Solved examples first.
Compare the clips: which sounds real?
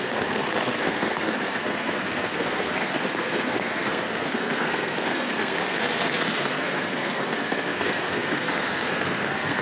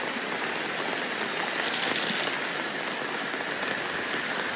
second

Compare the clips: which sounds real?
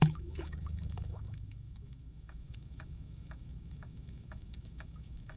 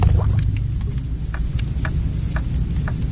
second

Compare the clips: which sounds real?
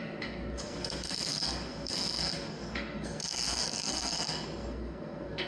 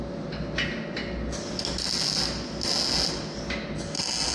second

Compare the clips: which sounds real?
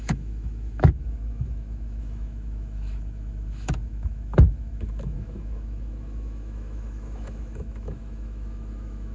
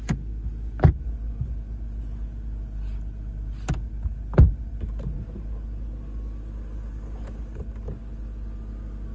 second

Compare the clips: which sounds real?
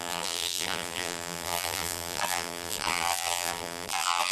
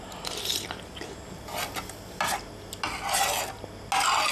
second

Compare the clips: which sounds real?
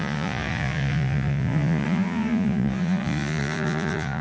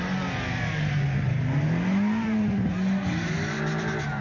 second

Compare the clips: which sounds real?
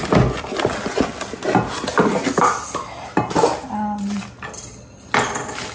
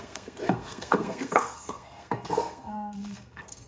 first